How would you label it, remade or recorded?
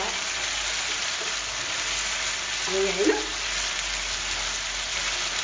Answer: recorded